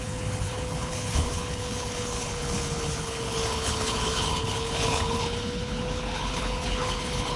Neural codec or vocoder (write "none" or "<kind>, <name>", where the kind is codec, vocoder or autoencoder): codec, HILCodec